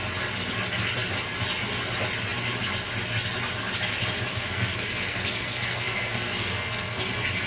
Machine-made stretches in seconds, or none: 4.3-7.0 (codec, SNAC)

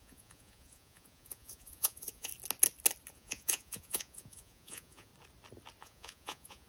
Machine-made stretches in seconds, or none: 0.0-2.3 (vocoder, Vocos); 3.1-5.1; 5.8-6.7

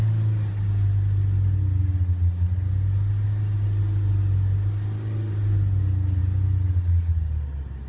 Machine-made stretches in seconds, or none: none

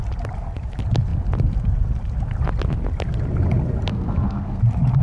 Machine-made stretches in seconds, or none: 3.9-4.6 (codec, SNAC)

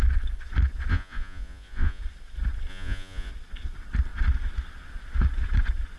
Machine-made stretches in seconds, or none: 0.9-2.0 (vocoder, Vocos); 2.7-3.3